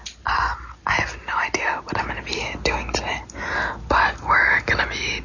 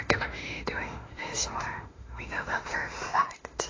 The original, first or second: first